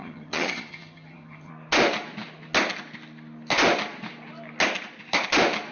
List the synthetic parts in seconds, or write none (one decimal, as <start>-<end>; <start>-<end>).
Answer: 0.0-1.5